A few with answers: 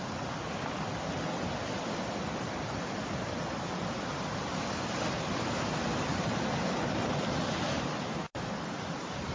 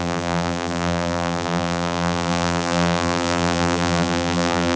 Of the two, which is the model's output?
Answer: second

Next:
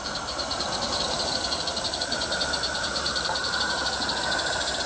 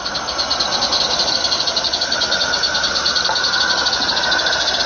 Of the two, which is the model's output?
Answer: first